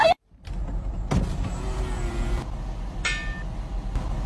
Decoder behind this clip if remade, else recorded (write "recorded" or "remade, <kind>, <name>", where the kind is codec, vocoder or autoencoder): recorded